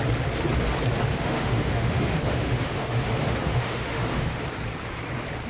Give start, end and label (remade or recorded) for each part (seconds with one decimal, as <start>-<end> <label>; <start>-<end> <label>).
0.0-1.1 recorded; 1.1-4.4 remade; 4.4-5.5 recorded